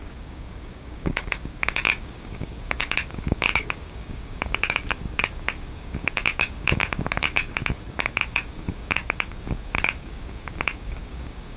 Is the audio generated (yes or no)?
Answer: yes